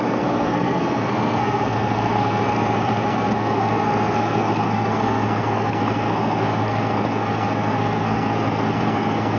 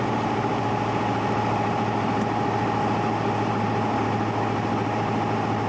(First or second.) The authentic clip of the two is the second